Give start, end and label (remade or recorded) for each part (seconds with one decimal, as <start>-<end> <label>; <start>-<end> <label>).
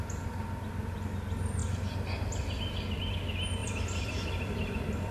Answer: 0.0-3.6 recorded; 3.6-5.1 remade